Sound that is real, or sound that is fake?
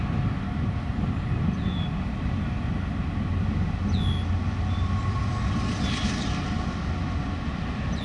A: real